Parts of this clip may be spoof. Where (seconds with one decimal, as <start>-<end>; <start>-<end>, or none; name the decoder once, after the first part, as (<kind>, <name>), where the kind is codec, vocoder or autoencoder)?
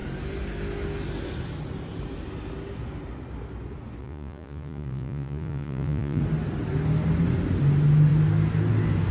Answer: 4.0-6.2 (vocoder, Vocos)